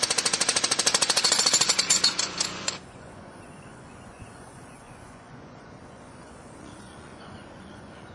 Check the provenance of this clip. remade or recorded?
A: remade